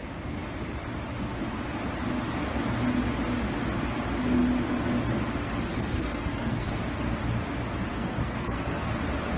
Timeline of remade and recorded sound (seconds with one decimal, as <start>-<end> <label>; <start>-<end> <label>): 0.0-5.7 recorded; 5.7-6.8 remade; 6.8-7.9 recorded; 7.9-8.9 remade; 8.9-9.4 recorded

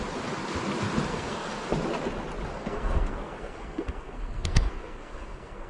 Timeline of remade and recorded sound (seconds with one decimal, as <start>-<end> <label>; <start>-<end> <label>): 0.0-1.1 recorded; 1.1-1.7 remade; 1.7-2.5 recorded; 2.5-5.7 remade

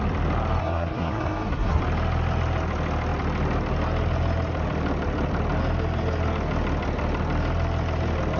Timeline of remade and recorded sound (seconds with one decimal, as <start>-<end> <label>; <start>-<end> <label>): 0.0-0.6 recorded; 0.6-1.8 remade; 1.8-8.4 recorded

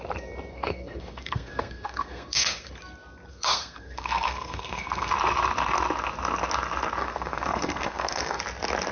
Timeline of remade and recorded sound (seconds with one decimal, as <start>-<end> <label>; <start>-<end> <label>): 0.0-0.5 recorded; 0.5-2.7 remade; 2.7-3.3 recorded; 3.3-5.1 remade; 5.1-7.0 recorded; 7.0-8.4 remade; 8.4-8.9 recorded

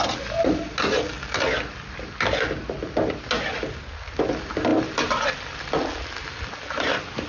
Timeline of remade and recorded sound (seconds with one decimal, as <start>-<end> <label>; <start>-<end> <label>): 0.0-7.3 recorded

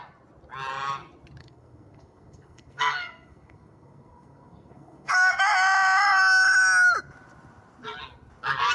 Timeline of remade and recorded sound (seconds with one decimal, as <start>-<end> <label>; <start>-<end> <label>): 0.0-1.4 recorded; 1.4-5.4 remade; 5.4-8.7 recorded

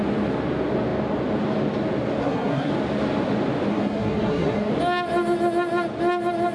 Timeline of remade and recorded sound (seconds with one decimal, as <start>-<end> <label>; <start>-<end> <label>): 0.0-2.2 recorded; 2.2-2.7 remade; 2.7-3.7 recorded; 3.7-4.7 remade; 4.7-6.5 recorded

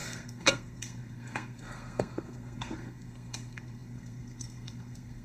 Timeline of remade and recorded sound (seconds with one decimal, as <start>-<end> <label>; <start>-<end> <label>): 0.0-5.2 remade